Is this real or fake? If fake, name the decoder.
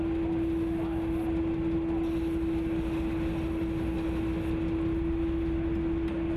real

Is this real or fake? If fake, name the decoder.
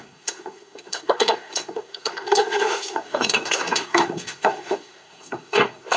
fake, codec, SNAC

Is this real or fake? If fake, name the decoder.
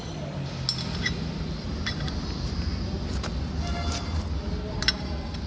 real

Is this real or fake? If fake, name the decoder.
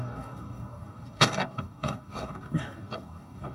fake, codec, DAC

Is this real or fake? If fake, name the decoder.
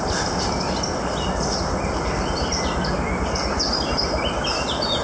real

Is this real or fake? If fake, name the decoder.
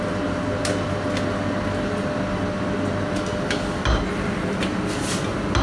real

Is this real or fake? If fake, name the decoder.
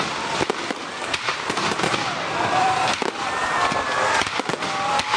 fake, vocoder, BigVGAN v2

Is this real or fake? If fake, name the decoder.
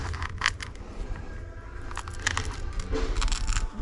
real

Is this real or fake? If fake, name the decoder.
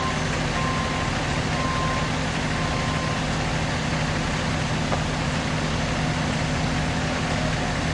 real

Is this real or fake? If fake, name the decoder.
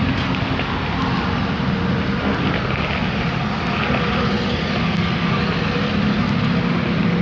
real